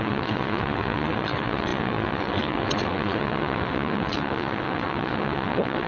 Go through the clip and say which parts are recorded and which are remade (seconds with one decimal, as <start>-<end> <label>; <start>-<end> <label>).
0.0-5.9 remade